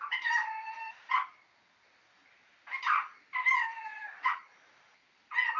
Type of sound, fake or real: real